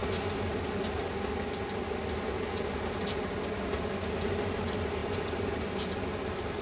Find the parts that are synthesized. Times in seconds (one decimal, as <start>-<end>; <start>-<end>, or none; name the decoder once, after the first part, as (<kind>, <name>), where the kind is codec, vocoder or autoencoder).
none